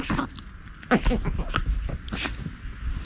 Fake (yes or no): no